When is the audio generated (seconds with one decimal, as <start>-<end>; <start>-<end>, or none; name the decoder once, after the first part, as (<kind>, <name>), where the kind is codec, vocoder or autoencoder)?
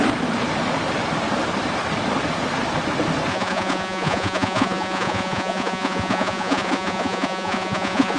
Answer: 3.3-8.2 (vocoder, Vocos)